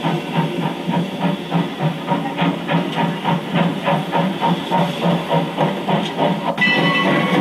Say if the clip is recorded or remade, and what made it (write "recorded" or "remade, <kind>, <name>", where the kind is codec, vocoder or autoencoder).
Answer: recorded